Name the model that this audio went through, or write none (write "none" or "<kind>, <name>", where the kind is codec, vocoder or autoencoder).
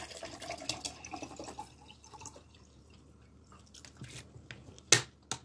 none